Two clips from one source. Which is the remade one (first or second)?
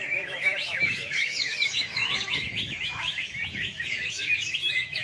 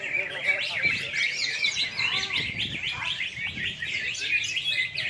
first